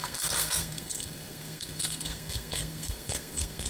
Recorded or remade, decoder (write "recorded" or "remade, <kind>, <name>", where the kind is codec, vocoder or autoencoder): remade, codec, SNAC